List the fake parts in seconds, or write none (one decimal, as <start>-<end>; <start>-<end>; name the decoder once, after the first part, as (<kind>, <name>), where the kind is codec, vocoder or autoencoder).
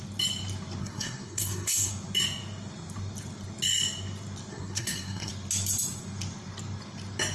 0.8-1.9 (codec, SNAC); 4.5-5.3